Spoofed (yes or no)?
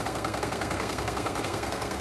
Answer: yes